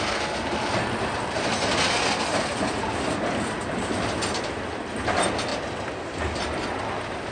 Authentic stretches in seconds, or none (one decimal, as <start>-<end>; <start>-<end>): 0.0-7.3